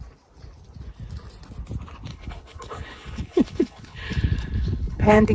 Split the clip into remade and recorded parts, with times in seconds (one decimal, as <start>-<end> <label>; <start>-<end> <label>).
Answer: 0.0-2.1 recorded; 2.1-5.3 remade